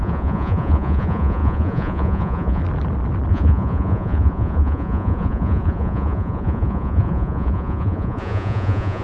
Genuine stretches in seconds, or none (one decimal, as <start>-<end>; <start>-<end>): 2.6-3.3